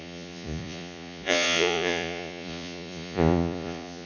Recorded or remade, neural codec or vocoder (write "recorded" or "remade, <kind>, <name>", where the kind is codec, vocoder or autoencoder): remade, vocoder, Vocos